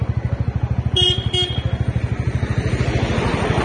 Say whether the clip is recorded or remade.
recorded